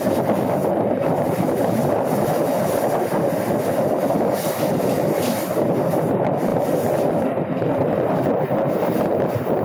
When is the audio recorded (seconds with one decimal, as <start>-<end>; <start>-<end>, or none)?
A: 0.0-9.6